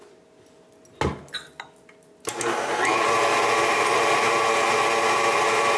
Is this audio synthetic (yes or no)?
no